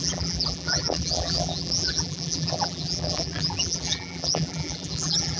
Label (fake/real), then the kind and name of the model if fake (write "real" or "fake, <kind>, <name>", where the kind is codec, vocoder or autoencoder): fake, vocoder, BigVGAN v2